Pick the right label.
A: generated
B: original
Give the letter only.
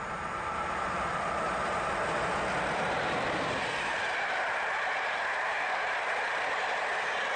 B